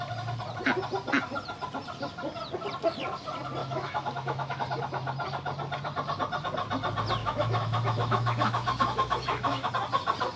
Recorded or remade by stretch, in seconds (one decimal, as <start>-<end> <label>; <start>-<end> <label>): 0.0-3.6 recorded; 3.6-4.6 remade; 4.6-7.2 recorded; 7.2-9.7 remade; 9.7-10.4 recorded